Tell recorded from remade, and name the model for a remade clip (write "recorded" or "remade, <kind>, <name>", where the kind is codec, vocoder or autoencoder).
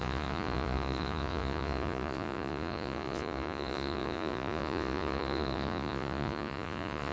remade, vocoder, Vocos